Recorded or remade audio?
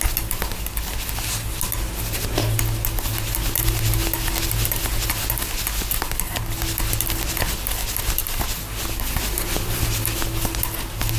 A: recorded